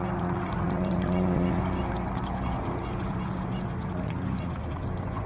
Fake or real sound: fake